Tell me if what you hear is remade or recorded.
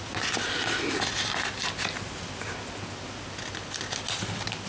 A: recorded